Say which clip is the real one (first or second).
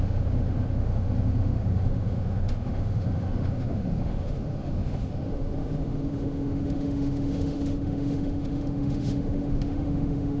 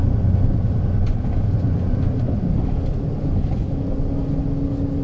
second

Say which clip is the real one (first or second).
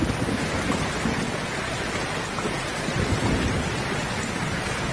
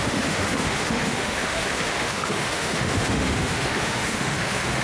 first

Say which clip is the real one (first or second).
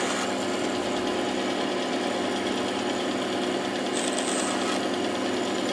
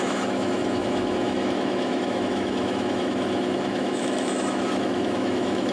first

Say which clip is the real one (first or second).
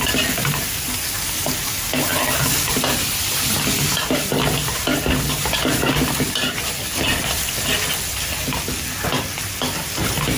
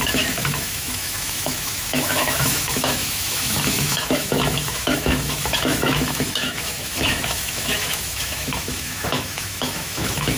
first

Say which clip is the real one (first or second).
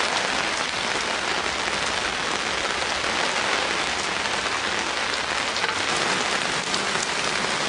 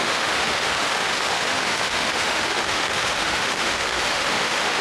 first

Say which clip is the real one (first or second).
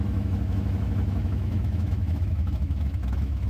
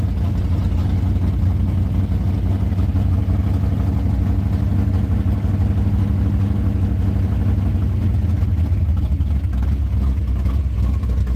second